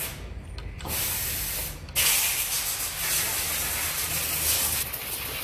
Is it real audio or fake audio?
real